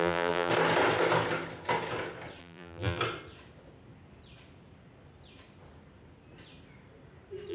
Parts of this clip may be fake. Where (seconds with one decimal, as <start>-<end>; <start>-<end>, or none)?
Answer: 0.0-0.5; 2.4-3.0